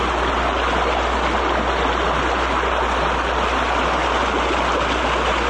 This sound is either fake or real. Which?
real